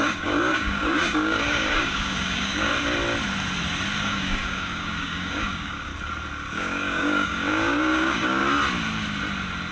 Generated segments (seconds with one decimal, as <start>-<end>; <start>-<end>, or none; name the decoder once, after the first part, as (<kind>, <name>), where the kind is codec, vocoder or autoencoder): 0.0-2.7 (codec, DAC); 4.0-5.9; 6.5-8.4